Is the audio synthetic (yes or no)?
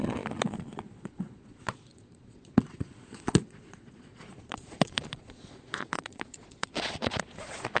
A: yes